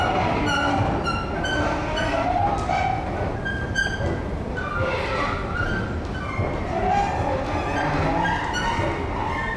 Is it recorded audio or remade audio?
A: recorded